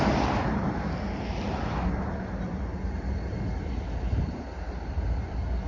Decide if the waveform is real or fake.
real